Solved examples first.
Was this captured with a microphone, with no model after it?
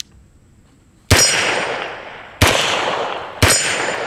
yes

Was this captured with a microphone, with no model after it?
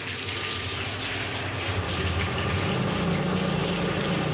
yes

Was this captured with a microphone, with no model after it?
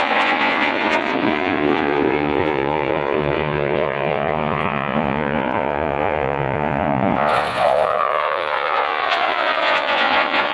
no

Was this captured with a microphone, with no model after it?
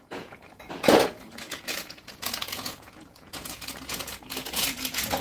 no